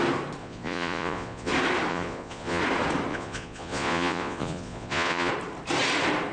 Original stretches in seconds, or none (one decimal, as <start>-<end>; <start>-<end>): 0.0-0.4; 1.5-1.9; 2.6-3.1; 5.3-6.3